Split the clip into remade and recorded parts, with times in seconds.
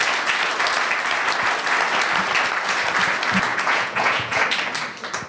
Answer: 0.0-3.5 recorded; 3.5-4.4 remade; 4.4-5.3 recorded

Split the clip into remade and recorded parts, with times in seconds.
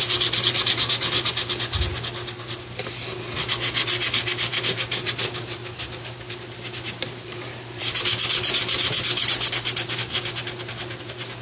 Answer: 0.0-11.4 recorded